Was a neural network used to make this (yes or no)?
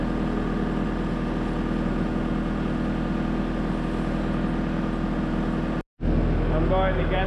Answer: no